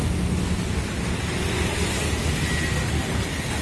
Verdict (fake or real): real